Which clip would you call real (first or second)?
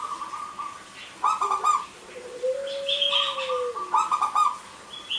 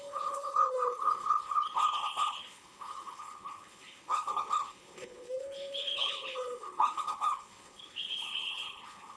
first